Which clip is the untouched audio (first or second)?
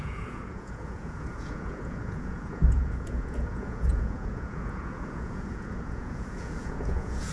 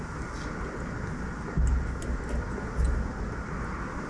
second